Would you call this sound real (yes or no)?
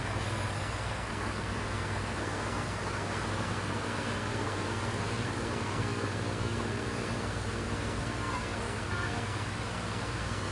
no